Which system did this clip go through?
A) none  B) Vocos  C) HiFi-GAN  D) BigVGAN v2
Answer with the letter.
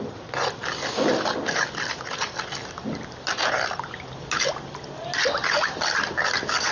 A